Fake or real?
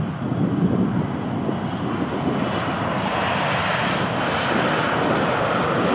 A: real